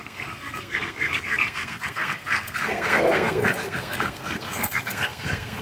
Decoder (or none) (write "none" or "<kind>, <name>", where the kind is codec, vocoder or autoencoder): codec, SNAC